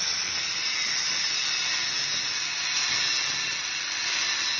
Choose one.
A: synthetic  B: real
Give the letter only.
B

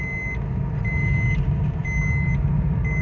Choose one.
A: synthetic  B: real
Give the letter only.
B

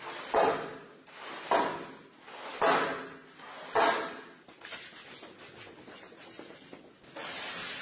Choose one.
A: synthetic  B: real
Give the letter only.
B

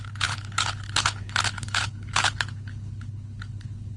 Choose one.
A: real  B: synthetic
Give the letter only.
B